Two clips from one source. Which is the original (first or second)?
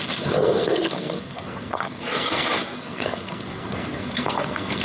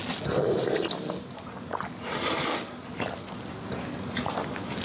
second